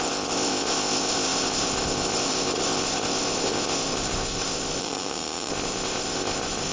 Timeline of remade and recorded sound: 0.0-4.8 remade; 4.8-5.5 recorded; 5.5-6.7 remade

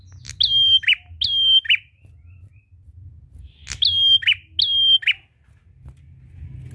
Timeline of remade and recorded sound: 0.0-6.7 recorded